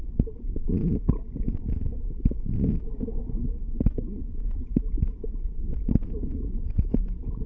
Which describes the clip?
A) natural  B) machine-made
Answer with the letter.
A